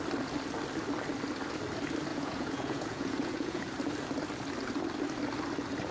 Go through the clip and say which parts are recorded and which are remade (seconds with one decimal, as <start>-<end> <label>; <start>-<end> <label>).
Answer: 0.0-2.1 recorded; 2.1-3.7 remade; 3.7-5.9 recorded